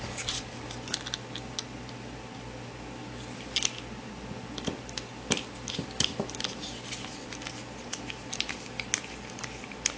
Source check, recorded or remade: recorded